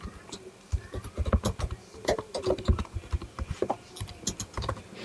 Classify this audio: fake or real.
real